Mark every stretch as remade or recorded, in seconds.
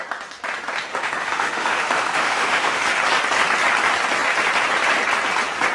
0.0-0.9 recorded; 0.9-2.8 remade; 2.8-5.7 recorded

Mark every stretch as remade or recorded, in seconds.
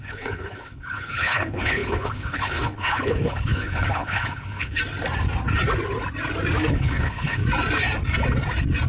0.0-4.8 remade; 4.8-6.7 recorded; 6.7-7.4 remade; 7.4-8.9 recorded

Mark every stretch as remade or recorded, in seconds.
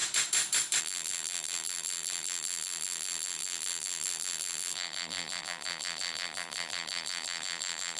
0.0-0.8 recorded; 0.8-8.0 remade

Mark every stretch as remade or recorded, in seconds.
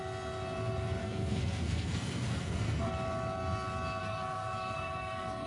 0.0-1.0 recorded; 1.0-2.9 remade; 2.9-4.0 recorded; 4.0-5.5 remade